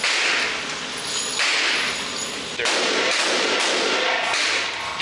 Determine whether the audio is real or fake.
real